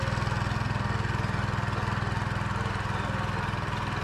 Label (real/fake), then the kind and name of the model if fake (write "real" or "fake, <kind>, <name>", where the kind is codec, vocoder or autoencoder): real